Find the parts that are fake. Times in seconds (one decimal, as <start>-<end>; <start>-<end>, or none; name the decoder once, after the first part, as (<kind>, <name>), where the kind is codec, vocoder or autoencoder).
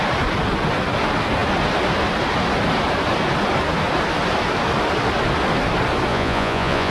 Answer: 6.1-6.9 (vocoder, Vocos)